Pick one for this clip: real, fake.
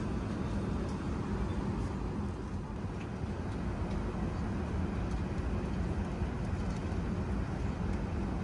real